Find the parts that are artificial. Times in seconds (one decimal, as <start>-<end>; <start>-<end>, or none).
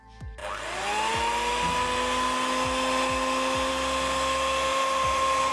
4.7-5.5